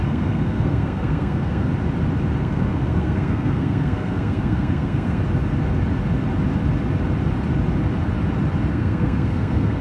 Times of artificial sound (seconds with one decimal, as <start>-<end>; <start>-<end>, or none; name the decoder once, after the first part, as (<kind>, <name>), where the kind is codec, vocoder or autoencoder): 0.0-1.7 (codec, SNAC); 2.4-5.2; 8.7-9.8